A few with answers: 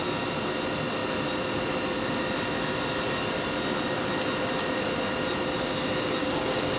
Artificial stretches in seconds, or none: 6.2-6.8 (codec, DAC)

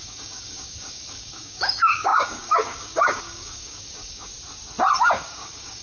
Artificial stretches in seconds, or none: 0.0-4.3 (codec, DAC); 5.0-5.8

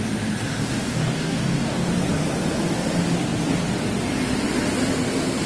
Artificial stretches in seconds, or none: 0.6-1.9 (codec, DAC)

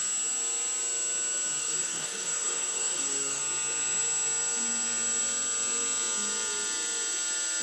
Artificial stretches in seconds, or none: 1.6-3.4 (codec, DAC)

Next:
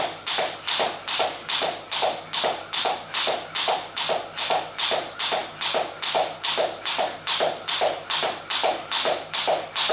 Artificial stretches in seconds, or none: none

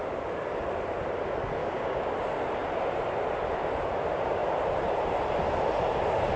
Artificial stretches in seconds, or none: 1.6-2.1 (codec, DAC)

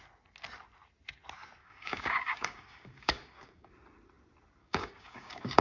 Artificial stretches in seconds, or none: 1.6-3.7 (codec, DAC); 4.6-5.6